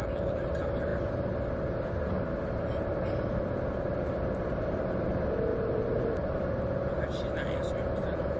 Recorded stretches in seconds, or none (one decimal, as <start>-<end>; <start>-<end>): 0.0-5.5; 6.4-8.4